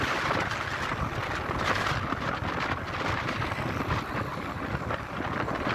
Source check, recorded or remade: recorded